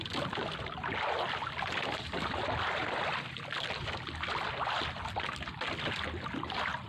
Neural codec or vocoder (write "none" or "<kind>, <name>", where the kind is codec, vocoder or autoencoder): none